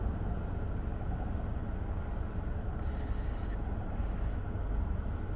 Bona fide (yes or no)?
yes